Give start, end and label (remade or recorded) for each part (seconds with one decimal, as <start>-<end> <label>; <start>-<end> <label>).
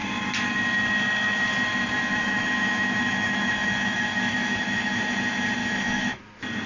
0.0-2.0 recorded; 2.0-5.0 remade; 5.0-5.6 recorded; 5.6-6.2 remade; 6.2-6.7 recorded